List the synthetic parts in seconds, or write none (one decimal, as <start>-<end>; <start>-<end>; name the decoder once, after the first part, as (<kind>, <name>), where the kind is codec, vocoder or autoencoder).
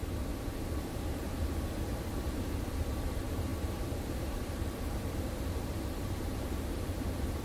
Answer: 0.7-7.4 (vocoder, BigVGAN v2)